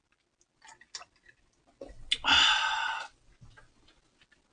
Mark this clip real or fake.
real